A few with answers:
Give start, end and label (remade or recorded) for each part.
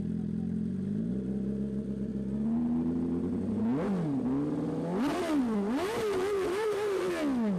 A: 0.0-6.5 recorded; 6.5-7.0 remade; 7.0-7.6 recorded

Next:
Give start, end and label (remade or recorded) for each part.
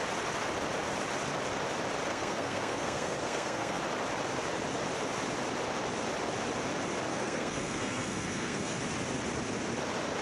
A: 0.0-2.1 recorded; 2.1-3.8 remade; 3.8-7.1 recorded; 7.1-8.8 remade; 8.8-10.2 recorded